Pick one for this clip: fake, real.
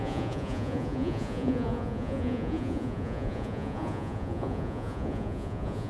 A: fake